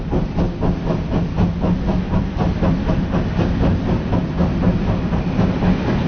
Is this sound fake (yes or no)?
no